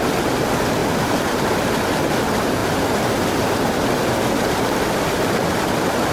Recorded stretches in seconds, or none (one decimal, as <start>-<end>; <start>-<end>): 0.0-6.1